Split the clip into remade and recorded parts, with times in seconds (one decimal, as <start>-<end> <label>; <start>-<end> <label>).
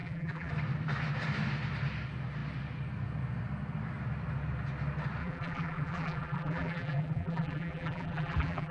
0.0-0.5 remade; 0.5-5.2 recorded; 5.2-8.7 remade